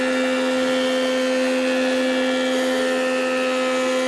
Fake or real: real